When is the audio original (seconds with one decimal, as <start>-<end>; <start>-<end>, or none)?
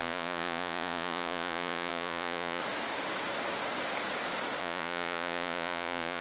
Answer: 2.6-4.6